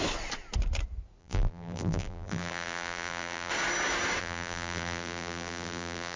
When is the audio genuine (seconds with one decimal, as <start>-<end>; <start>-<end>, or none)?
0.0-1.2; 3.5-4.2

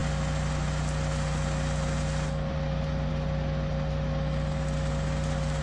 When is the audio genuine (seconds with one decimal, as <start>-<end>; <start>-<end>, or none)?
0.0-5.6

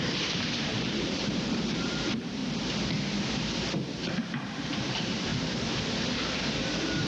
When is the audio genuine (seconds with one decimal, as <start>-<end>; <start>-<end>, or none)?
2.4-3.3

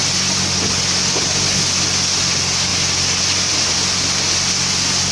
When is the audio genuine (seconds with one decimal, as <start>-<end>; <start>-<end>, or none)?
0.0-5.1

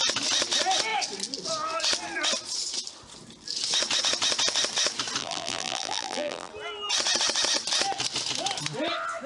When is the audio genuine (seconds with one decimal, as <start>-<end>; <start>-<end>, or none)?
0.0-5.2; 6.5-9.3

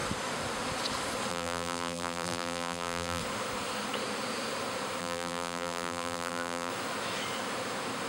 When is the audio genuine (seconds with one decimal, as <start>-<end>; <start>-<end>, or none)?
0.0-1.3; 3.2-5.0; 6.7-8.1

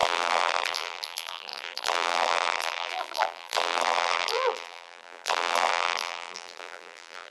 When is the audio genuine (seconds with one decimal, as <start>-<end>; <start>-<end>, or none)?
none